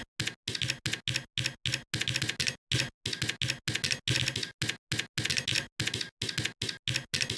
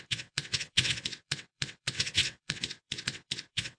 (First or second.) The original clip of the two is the first